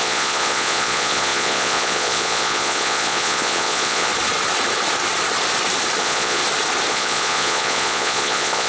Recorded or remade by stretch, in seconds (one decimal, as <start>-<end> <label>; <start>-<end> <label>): 0.0-4.1 remade; 4.1-6.0 recorded; 6.0-6.4 remade; 6.4-6.9 recorded; 6.9-8.7 remade